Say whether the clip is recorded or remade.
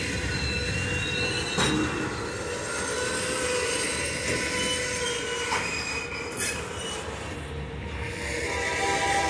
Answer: recorded